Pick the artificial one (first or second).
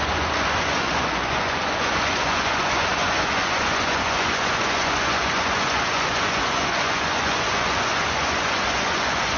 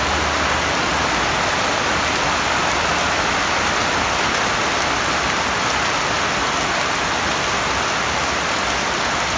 first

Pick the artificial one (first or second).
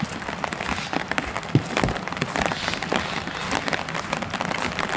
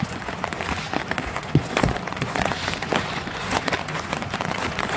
second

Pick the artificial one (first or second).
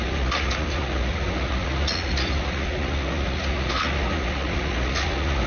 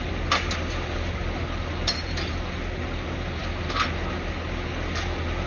first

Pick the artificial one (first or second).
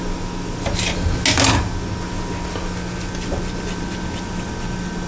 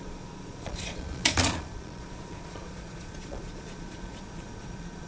second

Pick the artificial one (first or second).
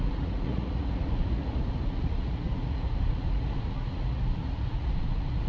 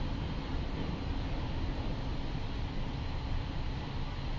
first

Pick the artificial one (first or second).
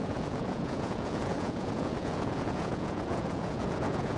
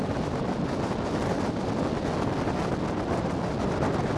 first